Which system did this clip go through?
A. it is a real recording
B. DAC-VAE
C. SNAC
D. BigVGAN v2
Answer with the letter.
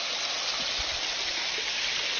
A